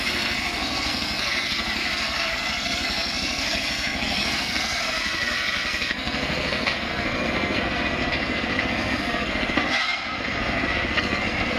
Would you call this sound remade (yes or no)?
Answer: yes